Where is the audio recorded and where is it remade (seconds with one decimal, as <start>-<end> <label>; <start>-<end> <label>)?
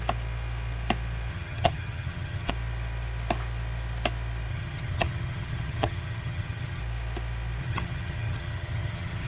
0.0-1.3 recorded; 1.3-2.5 remade; 2.5-4.5 recorded; 4.5-6.8 remade; 6.8-7.6 recorded; 7.6-9.3 remade